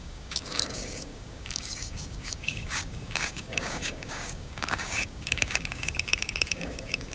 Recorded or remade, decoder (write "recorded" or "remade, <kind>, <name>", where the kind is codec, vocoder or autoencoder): remade, codec, DAC